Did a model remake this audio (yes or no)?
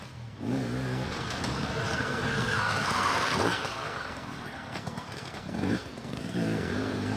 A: yes